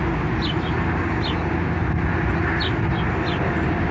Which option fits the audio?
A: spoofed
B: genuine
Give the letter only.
B